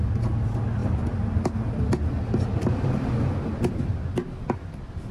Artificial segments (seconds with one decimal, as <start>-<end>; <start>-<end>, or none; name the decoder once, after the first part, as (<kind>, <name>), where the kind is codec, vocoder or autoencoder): none